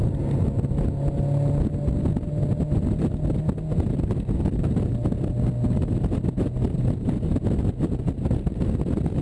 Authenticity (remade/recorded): recorded